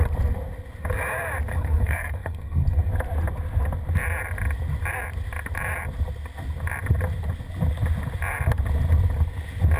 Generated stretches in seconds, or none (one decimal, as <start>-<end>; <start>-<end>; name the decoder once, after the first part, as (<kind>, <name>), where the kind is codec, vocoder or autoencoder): 1.5-2.9 (codec, SNAC)